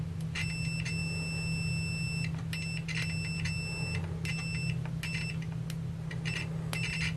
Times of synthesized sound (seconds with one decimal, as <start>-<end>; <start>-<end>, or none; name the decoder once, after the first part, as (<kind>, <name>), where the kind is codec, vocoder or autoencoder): none

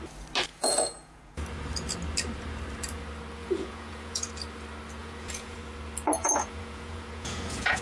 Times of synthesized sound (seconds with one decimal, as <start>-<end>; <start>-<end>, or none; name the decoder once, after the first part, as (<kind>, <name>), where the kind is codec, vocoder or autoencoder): 0.5-1.4 (vocoder, Vocos); 3.4-4.3; 5.0-5.6; 6.2-7.8

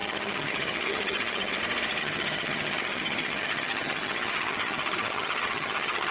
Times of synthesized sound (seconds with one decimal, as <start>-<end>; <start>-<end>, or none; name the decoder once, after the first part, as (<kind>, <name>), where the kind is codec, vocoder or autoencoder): 0.0-1.6 (vocoder, HiFi-GAN); 2.0-6.1

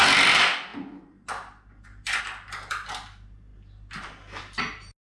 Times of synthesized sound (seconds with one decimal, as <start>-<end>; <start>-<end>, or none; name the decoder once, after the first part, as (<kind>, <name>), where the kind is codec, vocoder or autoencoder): none

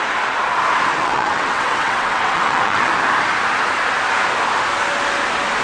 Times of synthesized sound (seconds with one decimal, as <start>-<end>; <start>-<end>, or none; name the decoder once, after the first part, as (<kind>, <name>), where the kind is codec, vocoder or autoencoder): 0.9-2.9 (vocoder, WaveNeXt)

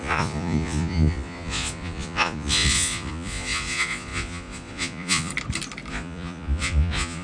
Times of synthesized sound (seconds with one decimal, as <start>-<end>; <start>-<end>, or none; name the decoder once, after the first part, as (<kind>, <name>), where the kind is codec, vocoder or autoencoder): 0.0-5.3 (vocoder, Vocos); 5.9-7.2

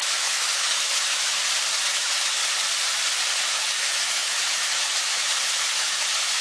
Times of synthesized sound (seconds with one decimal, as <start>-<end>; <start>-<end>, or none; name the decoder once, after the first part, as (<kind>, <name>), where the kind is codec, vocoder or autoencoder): 0.0-1.4 (autoencoder, DAC-VAE); 1.9-2.4; 3.4-6.4